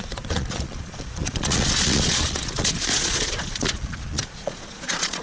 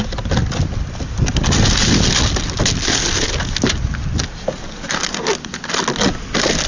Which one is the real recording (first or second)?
second